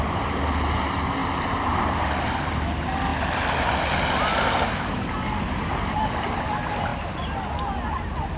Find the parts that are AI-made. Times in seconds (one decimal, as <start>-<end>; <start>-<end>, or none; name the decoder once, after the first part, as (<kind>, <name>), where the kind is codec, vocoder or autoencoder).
none